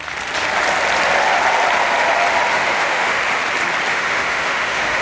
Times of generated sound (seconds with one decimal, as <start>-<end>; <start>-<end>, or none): 2.5-3.2; 3.9-5.0